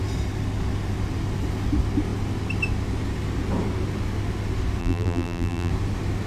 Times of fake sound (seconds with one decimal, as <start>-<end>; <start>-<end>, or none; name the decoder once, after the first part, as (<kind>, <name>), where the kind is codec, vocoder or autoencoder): 4.8-5.7 (vocoder, BigVGAN v2)